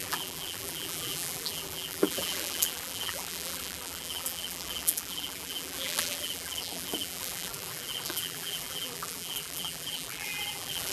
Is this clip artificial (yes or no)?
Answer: yes